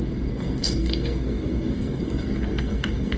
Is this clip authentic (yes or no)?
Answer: no